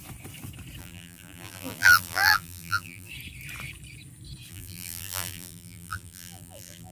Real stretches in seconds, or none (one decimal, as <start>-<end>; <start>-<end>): 0.0-0.8; 3.1-4.5